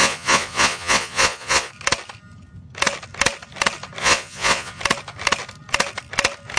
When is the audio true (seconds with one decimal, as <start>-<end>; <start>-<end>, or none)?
1.7-4.0; 4.8-6.6